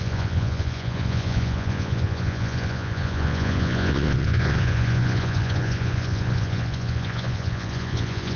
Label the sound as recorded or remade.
remade